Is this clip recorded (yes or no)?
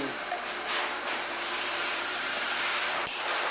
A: no